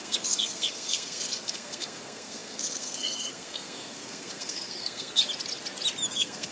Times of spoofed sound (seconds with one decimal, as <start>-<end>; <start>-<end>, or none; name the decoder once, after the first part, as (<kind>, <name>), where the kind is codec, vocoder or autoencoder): 0.0-5.2 (codec, SNAC); 6.1-6.5